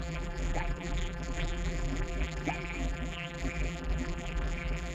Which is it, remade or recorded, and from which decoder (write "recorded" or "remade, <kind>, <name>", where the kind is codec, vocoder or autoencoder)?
remade, vocoder, BigVGAN v2